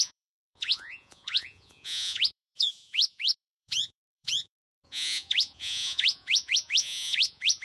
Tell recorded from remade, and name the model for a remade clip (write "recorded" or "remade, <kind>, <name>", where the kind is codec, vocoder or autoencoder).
remade, vocoder, Vocos